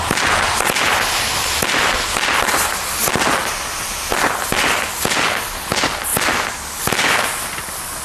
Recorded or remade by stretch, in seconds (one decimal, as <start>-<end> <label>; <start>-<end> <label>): 0.0-8.0 recorded